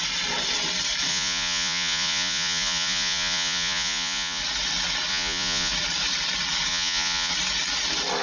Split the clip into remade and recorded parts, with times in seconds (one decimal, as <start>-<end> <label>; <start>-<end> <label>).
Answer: 0.0-1.1 recorded; 1.1-4.4 remade; 4.4-5.1 recorded; 5.1-5.7 remade; 5.7-6.7 recorded; 6.7-7.3 remade; 7.3-8.2 recorded